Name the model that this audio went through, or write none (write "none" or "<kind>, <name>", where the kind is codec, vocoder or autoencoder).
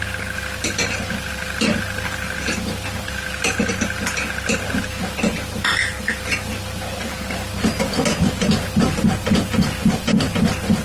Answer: none